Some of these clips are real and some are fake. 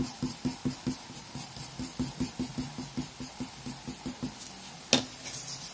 real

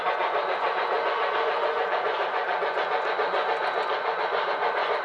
fake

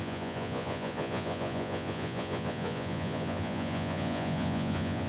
fake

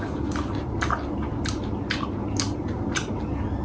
real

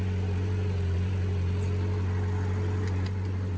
real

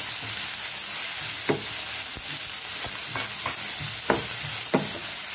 real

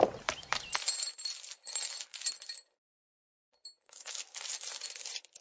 real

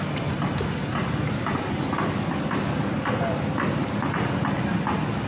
real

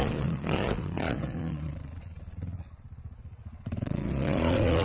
fake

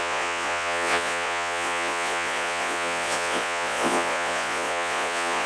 fake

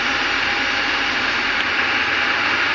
real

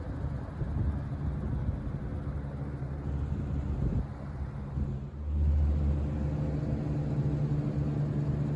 real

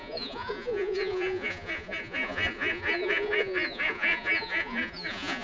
fake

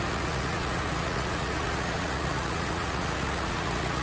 fake